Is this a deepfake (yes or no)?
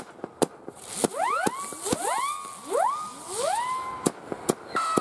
no